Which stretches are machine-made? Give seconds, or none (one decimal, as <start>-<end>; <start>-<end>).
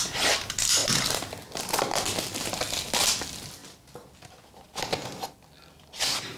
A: none